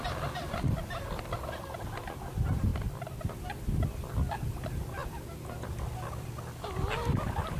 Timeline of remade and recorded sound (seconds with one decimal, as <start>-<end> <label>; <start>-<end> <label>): 0.0-7.6 recorded